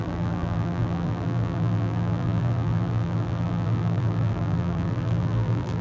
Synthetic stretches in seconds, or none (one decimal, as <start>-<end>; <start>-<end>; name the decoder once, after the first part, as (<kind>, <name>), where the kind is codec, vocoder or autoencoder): 0.0-5.8 (vocoder, BigVGAN v2)